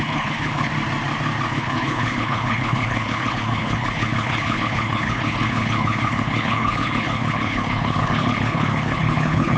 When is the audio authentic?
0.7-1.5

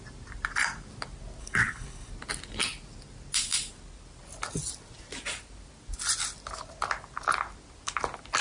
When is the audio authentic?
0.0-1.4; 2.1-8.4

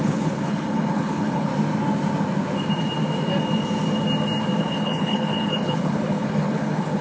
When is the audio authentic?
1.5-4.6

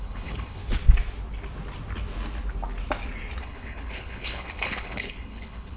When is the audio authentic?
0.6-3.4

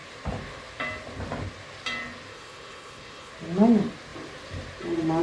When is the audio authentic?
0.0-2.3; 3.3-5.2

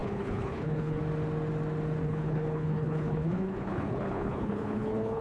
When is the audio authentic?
1.0-2.0